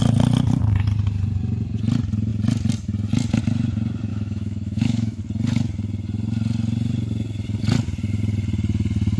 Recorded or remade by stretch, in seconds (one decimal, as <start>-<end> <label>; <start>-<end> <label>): 0.0-4.1 recorded; 4.1-5.2 remade; 5.2-9.2 recorded